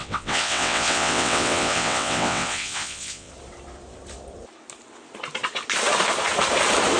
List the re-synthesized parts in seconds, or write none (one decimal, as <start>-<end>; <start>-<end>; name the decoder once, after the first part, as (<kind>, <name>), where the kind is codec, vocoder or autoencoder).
0.0-3.3 (vocoder, WaveNeXt)